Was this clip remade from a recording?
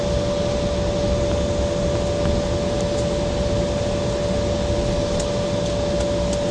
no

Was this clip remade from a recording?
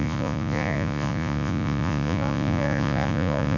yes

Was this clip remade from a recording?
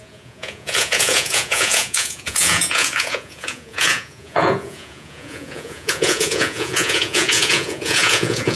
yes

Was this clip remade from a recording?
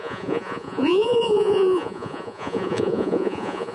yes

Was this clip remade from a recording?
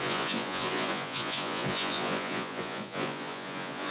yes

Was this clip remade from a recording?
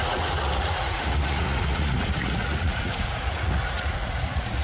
yes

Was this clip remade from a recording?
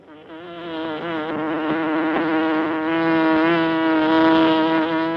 no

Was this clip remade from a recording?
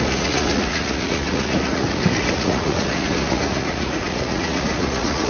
yes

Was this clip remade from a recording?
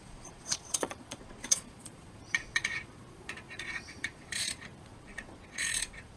yes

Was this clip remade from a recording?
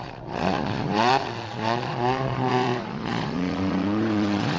yes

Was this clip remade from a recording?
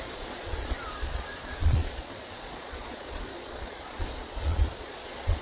yes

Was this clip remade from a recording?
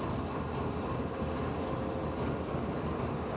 no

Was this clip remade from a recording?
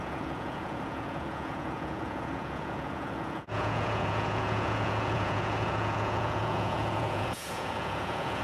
yes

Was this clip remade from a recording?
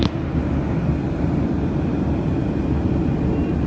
no